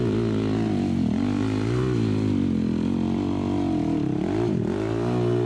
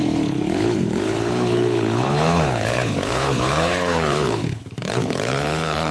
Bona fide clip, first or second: first